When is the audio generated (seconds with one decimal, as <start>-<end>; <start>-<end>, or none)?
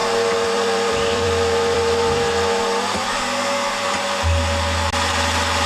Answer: 0.0-3.2